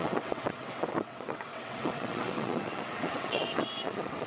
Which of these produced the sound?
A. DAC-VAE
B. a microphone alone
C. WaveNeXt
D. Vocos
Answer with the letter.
C